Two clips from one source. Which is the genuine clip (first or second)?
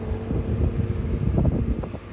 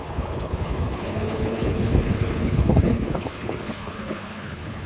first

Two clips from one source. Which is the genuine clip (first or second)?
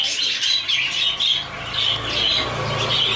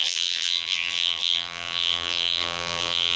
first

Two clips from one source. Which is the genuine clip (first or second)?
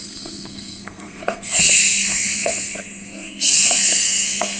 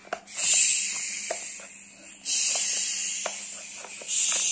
second